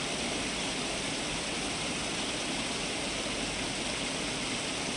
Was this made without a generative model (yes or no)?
yes